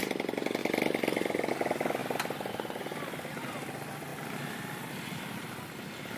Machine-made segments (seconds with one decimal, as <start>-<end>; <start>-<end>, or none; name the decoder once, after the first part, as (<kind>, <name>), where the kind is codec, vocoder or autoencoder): none